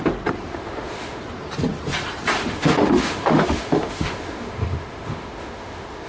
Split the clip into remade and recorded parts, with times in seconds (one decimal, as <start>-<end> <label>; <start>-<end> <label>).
0.0-0.5 recorded; 0.5-1.2 remade; 1.2-2.4 recorded; 2.4-6.1 remade